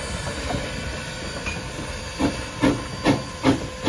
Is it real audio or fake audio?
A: real